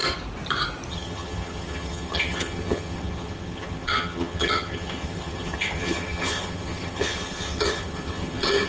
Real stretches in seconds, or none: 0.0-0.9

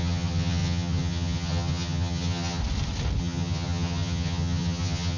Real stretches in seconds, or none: 2.6-3.2

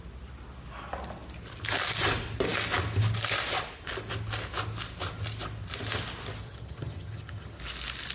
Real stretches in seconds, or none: 0.0-6.4; 7.6-8.1

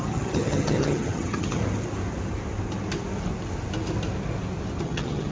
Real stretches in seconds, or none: 1.6-4.8

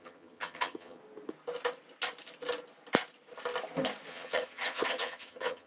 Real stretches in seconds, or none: 1.0-4.1

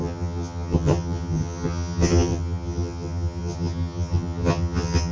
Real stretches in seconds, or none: none

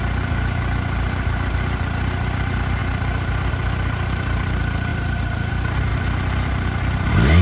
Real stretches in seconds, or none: 0.0-7.4

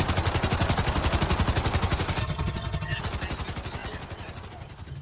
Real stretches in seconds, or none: 0.0-2.2; 3.0-5.0